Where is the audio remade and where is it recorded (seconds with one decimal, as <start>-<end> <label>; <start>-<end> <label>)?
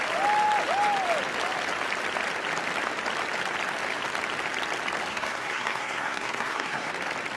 0.0-5.1 recorded; 5.1-6.9 remade; 6.9-7.4 recorded